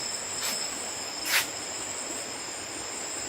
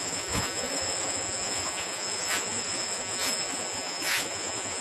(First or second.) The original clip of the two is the first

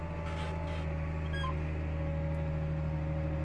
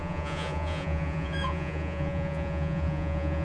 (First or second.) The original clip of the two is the first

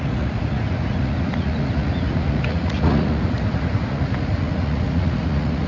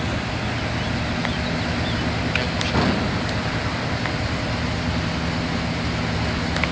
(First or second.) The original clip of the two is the second